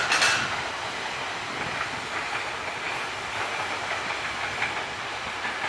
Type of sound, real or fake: real